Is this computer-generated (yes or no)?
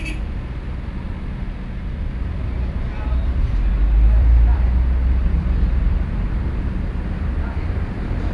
yes